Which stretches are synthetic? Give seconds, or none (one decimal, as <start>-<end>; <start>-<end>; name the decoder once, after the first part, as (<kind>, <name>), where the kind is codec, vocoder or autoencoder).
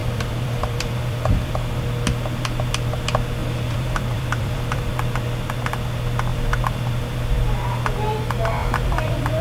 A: 0.0-1.5 (vocoder, BigVGAN v2); 3.4-4.9; 6.3-7.4; 8.6-9.4